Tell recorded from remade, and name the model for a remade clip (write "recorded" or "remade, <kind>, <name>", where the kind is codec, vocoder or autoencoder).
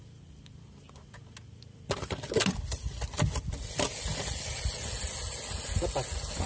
recorded